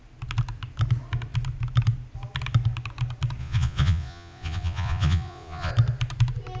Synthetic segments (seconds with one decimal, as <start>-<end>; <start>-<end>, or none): 3.4-5.7